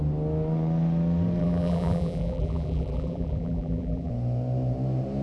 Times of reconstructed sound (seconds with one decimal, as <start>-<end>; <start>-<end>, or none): 1.4-4.1